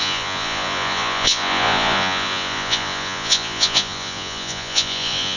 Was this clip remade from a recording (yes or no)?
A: yes